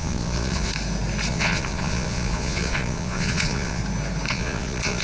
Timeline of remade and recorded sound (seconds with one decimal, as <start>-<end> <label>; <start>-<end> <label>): 0.0-0.7 remade; 0.7-1.3 recorded; 1.3-3.8 remade; 3.8-4.3 recorded; 4.3-5.0 remade